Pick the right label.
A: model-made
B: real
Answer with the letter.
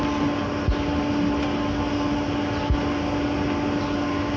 B